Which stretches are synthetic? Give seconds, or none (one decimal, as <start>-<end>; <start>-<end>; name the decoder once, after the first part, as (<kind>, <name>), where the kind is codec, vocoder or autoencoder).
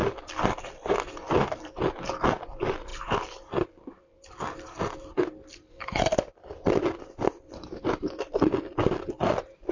0.5-9.7 (vocoder, BigVGAN v2)